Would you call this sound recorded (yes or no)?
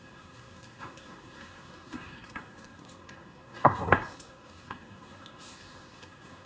no